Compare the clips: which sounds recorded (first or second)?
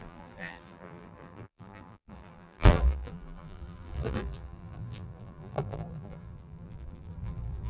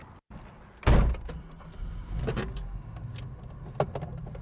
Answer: second